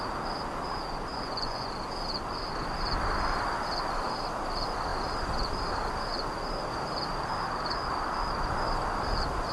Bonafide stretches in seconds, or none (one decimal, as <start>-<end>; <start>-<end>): 0.0-1.1; 1.7-9.5